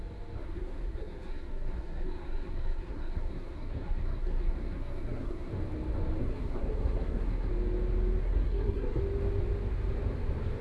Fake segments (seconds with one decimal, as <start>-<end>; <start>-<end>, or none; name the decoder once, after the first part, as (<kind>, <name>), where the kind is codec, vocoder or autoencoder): 0.4-5.5 (codec, SNAC); 6.2-7.5; 8.2-9.0